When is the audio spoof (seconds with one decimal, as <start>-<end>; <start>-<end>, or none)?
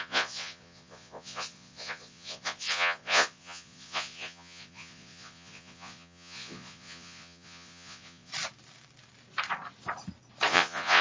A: 0.0-8.3; 10.5-11.0